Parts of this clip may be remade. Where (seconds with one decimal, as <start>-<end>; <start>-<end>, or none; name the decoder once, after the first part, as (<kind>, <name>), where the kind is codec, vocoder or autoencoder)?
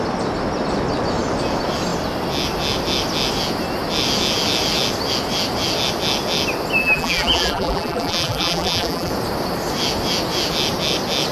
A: 6.8-9.1 (vocoder, BigVGAN v2)